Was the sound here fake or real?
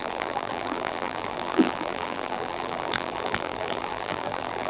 fake